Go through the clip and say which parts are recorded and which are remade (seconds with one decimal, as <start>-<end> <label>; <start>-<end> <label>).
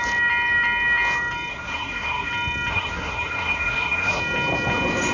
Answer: 0.0-1.5 recorded; 1.5-2.3 remade; 2.3-2.7 recorded; 2.7-4.2 remade; 4.2-5.1 recorded